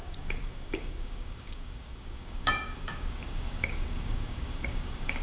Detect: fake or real fake